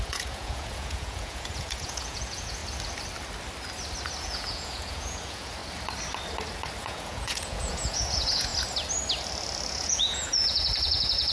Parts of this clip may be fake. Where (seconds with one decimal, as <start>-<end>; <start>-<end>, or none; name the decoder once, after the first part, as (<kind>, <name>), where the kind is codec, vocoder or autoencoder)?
0.0-2.6 (vocoder, Vocos); 4.2-5.6; 6.8-8.5; 9.7-11.3